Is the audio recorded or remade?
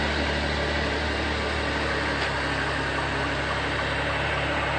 recorded